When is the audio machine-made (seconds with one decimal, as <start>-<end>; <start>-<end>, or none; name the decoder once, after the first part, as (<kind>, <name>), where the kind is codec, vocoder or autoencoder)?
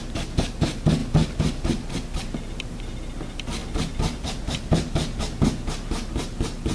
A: 1.0-2.8 (vocoder, BigVGAN v2); 3.6-5.2